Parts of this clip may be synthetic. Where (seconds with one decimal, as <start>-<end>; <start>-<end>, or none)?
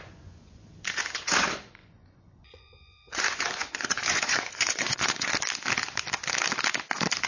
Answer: 0.0-5.3